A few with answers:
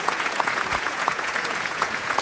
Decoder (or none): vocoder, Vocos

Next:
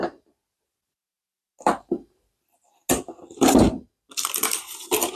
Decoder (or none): none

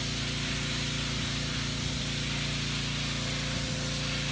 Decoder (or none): none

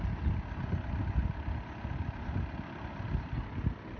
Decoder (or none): none